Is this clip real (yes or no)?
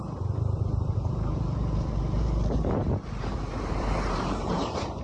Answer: no